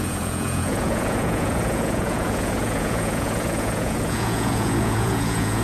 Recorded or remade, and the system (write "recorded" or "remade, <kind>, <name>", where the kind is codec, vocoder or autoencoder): remade, vocoder, Vocos